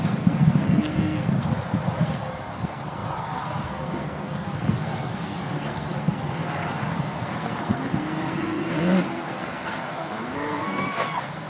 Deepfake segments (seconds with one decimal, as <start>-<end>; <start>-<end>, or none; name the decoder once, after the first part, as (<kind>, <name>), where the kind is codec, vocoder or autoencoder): 0.0-1.5 (codec, SNAC); 2.0-11.5